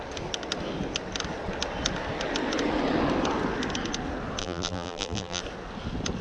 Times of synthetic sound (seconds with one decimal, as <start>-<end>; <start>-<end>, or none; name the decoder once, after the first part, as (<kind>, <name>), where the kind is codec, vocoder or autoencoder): 4.4-5.4 (vocoder, BigVGAN v2)